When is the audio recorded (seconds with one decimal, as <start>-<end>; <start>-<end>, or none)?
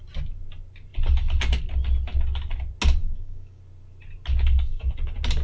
0.0-3.0; 3.6-4.3; 4.9-5.4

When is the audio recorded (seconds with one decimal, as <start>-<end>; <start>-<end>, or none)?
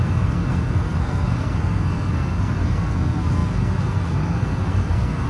none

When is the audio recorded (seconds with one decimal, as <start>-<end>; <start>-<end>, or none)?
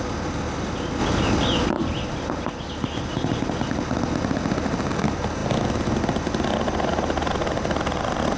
0.0-8.4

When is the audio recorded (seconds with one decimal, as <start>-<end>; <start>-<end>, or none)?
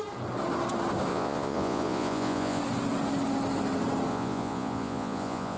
0.0-1.1; 2.6-4.1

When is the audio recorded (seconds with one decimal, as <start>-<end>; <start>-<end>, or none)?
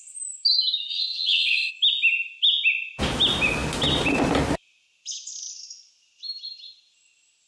0.0-0.9; 1.7-7.5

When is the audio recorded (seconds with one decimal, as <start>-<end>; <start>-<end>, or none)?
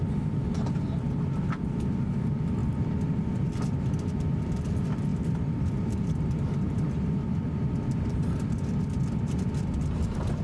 0.0-5.1; 8.5-10.4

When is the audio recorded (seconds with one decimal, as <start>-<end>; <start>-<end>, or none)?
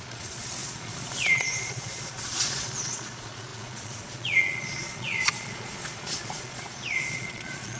none